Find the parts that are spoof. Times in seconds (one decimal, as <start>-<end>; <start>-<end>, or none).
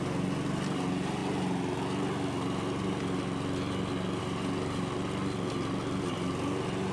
none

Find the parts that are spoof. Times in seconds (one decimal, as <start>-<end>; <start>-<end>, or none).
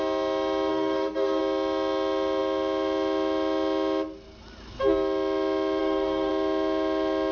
0.7-1.4; 5.8-6.3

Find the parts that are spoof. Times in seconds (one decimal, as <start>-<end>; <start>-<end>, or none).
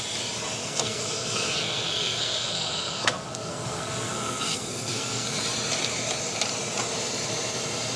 0.6-5.4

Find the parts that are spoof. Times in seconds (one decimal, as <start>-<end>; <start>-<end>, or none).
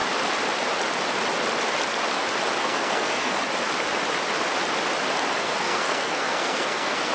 2.6-3.4; 5.4-7.1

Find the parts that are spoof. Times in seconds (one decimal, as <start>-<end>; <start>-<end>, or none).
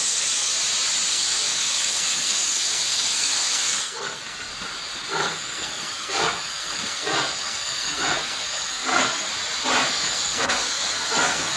0.0-0.5; 1.1-4.5; 5.1-9.3; 9.9-11.6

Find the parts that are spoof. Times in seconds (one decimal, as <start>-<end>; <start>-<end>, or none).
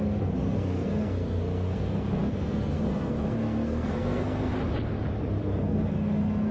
0.0-4.5; 5.4-6.5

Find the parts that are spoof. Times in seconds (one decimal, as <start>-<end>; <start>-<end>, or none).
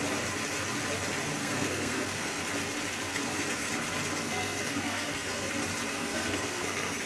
1.4-2.4; 3.1-3.7; 4.2-5.5; 5.9-7.1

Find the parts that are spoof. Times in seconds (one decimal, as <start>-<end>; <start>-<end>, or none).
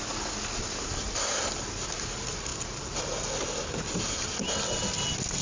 none